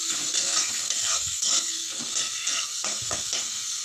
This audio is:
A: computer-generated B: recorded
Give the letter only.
A